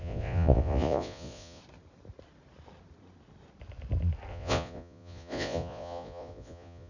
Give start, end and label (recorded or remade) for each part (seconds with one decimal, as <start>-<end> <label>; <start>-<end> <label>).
0.0-1.6 remade; 1.6-4.3 recorded; 4.3-6.9 remade